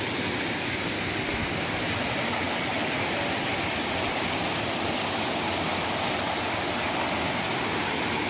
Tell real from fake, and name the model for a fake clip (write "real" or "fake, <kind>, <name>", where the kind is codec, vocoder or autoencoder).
real